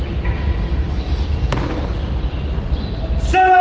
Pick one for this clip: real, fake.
real